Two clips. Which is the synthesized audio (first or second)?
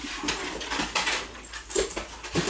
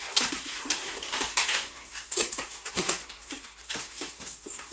second